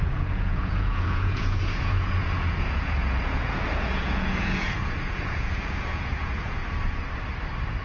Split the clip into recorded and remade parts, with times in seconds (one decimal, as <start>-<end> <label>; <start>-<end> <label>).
0.0-6.6 remade; 6.6-7.8 recorded